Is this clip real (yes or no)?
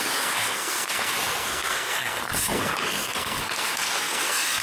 no